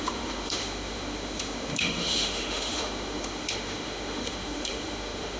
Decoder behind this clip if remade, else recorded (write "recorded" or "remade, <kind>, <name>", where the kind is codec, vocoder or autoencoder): remade, autoencoder, DAC-VAE